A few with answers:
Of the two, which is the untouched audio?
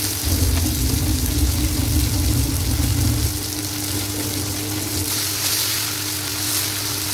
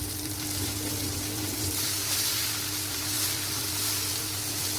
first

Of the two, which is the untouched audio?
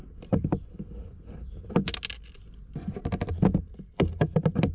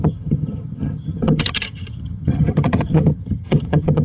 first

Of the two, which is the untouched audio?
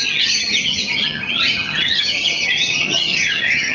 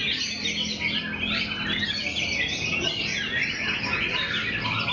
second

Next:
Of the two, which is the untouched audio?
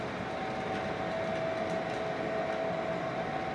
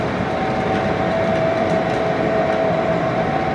first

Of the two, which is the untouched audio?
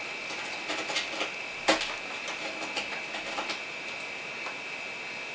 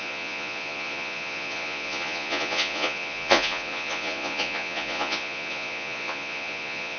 first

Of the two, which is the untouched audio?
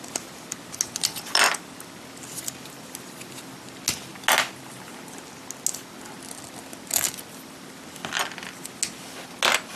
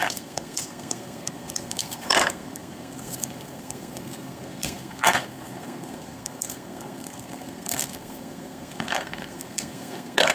first